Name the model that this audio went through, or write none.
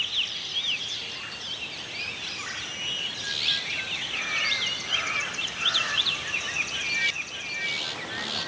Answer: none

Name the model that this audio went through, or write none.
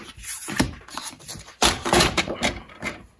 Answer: vocoder, BigVGAN v2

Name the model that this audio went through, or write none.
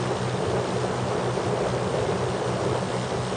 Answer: none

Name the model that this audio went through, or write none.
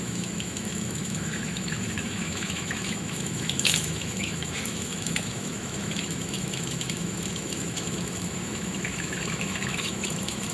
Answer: autoencoder, DAC-VAE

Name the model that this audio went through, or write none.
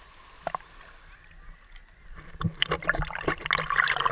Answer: none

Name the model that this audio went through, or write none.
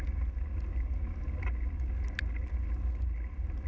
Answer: none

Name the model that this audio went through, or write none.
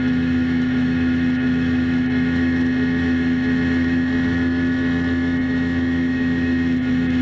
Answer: autoencoder, DAC-VAE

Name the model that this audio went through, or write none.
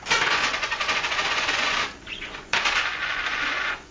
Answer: vocoder, Vocos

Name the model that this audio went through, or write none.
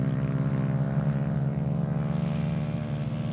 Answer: none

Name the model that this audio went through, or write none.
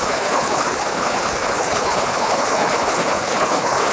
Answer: codec, HILCodec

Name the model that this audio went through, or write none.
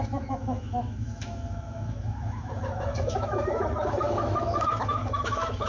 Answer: autoencoder, DAC-VAE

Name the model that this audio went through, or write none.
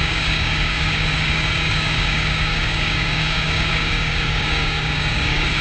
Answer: codec, DAC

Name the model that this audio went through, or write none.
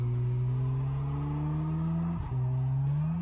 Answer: none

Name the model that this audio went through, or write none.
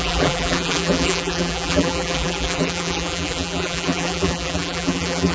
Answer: vocoder, BigVGAN v2